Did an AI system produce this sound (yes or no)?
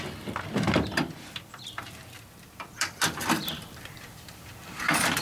yes